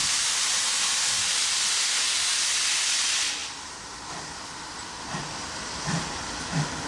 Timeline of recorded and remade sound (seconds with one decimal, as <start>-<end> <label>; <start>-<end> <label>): 0.0-3.4 recorded; 3.4-6.9 remade